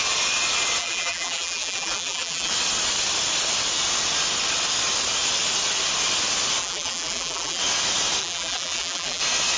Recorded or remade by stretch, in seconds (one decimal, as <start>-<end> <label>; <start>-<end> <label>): 0.0-0.8 recorded; 0.8-2.5 remade; 2.5-6.6 recorded; 6.6-7.6 remade; 7.6-8.2 recorded; 8.2-9.2 remade; 9.2-9.6 recorded